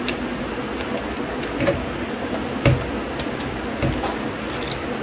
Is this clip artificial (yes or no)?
no